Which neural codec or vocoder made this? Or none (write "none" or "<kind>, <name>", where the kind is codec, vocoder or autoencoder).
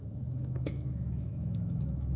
autoencoder, DAC-VAE